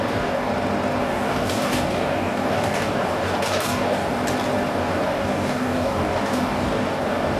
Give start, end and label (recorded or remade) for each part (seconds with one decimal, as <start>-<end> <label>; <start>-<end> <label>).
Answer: 0.0-0.5 remade; 0.5-1.0 recorded; 1.0-4.2 remade; 4.2-4.7 recorded; 4.7-7.4 remade